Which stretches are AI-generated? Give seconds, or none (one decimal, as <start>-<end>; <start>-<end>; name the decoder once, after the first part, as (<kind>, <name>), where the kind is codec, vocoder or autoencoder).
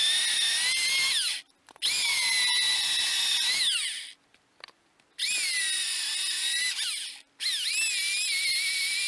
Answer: none